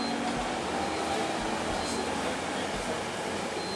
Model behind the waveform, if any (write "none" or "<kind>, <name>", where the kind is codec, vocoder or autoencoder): none